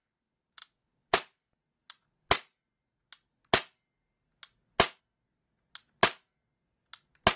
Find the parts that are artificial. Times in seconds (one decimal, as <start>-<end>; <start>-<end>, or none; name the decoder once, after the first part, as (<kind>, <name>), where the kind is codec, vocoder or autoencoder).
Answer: none